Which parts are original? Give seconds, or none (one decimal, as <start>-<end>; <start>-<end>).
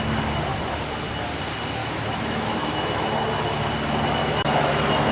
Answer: 0.0-1.8; 3.0-4.2